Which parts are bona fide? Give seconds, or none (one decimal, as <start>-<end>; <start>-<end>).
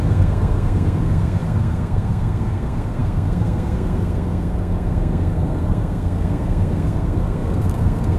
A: none